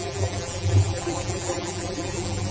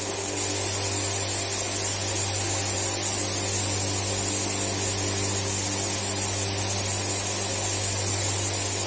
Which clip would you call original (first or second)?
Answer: second